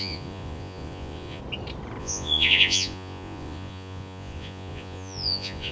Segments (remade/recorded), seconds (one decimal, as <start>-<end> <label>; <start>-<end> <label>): 0.0-1.4 remade; 1.4-2.0 recorded; 2.0-5.7 remade